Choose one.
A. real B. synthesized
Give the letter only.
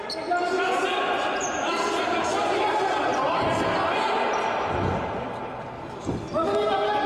A